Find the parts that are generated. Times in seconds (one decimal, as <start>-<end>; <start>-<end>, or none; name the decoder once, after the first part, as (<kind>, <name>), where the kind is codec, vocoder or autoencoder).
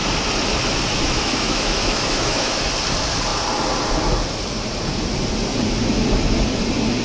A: 0.9-2.6 (autoencoder, DAC-VAE)